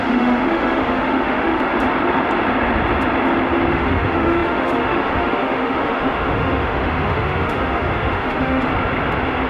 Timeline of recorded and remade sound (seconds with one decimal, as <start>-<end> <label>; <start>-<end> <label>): 0.0-1.7 remade; 1.7-3.7 recorded; 3.7-8.7 remade; 8.7-9.5 recorded